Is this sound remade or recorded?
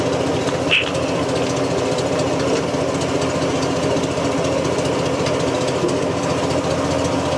recorded